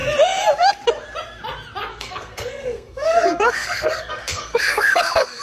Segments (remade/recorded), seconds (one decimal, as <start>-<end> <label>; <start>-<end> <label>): 0.0-1.9 recorded; 1.9-5.4 remade